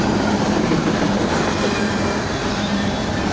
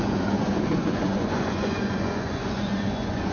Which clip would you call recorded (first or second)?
first